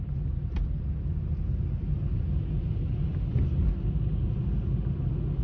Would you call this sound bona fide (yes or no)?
yes